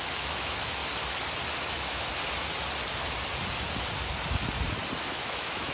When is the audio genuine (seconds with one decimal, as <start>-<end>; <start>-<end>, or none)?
0.8-1.7; 2.1-5.0